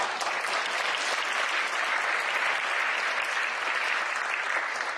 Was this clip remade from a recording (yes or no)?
no